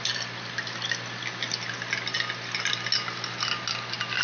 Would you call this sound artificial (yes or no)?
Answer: no